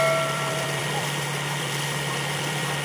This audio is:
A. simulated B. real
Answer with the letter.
A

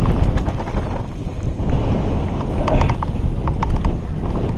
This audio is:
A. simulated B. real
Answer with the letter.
B